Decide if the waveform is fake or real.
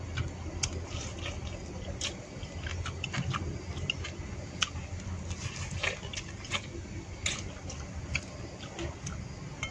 real